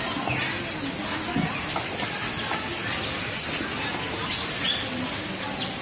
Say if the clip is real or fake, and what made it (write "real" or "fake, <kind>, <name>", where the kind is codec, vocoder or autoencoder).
real